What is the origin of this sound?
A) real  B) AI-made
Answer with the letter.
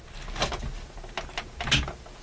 A